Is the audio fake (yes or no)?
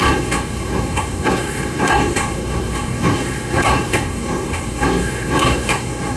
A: yes